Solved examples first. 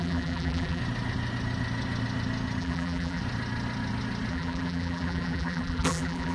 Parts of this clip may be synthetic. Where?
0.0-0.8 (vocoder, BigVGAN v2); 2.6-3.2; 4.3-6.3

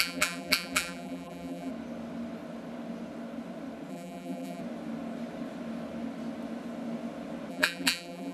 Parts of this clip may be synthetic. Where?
0.0-1.7 (vocoder, BigVGAN v2); 3.9-4.6; 7.5-8.3

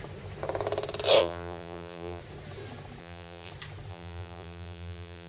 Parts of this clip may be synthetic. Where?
1.2-2.2 (vocoder, BigVGAN v2); 3.0-3.5; 3.9-5.3